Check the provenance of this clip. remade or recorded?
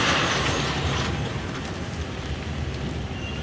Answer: recorded